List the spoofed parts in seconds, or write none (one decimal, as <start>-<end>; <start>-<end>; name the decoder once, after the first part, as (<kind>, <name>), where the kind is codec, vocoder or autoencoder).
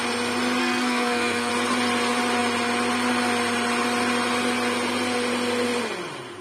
0.6-1.5 (codec, SNAC)